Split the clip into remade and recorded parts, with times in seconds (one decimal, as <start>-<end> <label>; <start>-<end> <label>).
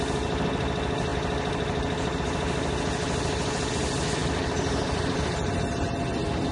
0.0-4.2 recorded; 4.2-5.2 remade; 5.2-6.5 recorded